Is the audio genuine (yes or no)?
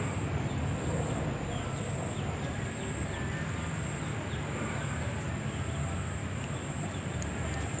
yes